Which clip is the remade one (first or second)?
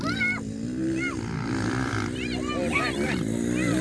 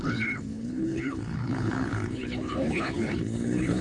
second